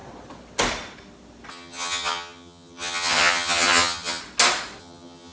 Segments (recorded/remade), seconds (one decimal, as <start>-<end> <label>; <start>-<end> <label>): 0.0-1.5 recorded; 1.5-4.2 remade; 4.2-4.8 recorded; 4.8-5.3 remade